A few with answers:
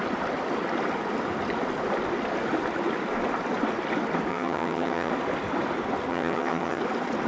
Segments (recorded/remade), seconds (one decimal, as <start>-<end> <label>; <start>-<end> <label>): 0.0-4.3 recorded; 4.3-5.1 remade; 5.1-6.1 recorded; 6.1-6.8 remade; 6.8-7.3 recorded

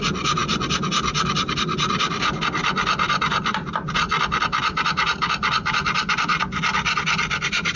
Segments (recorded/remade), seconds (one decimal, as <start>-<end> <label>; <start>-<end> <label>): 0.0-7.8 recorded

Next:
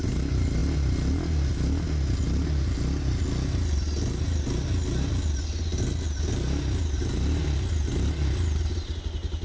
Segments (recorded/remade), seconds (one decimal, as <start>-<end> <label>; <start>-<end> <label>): 0.0-9.4 recorded